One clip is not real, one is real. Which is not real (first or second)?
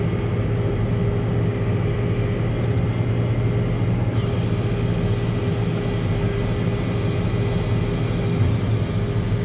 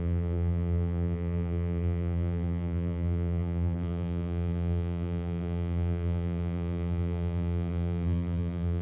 second